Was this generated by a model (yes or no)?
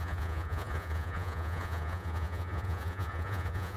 yes